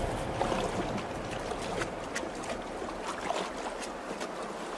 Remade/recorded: recorded